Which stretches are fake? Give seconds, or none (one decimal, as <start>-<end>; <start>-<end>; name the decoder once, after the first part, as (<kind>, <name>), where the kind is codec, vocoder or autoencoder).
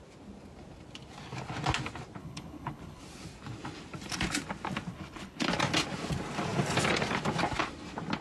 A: 2.2-3.0 (codec, HILCodec); 4.9-5.5